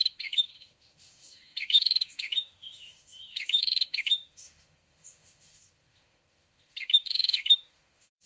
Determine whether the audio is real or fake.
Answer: fake